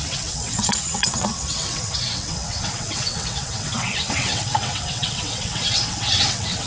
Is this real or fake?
fake